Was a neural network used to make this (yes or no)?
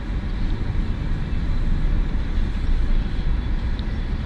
yes